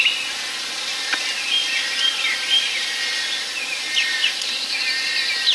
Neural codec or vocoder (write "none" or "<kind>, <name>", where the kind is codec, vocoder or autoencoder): none